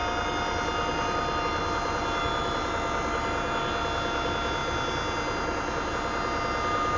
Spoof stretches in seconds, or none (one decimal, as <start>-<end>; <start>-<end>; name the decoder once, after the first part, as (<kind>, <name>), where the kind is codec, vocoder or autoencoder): none